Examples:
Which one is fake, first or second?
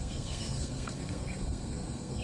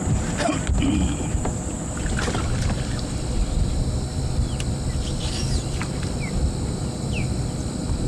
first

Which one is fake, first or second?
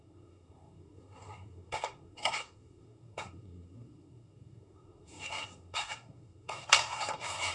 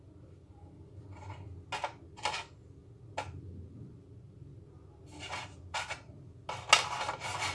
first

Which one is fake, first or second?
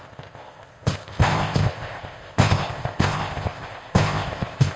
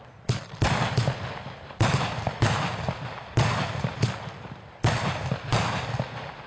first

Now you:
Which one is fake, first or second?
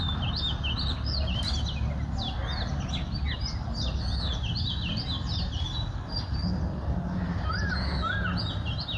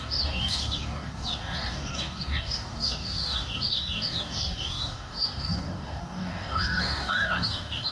second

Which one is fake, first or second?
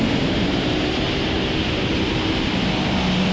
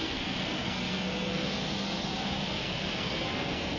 second